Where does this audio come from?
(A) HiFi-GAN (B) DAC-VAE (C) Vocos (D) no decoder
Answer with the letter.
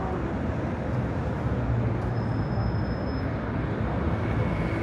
D